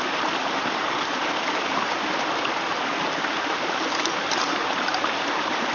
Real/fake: fake